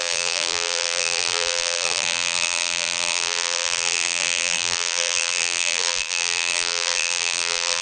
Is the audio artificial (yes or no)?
yes